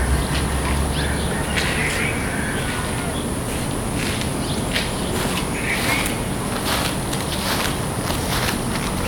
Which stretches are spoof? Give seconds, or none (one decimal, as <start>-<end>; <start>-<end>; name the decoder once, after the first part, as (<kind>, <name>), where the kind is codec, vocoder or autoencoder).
none